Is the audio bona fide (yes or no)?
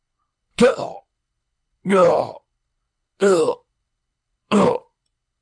no